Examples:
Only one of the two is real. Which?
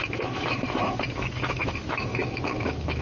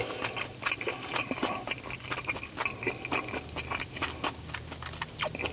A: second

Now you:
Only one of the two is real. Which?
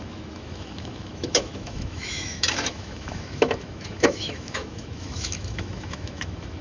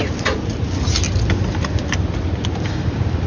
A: second